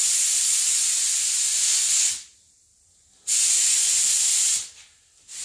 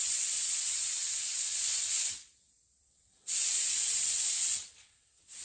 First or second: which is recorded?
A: first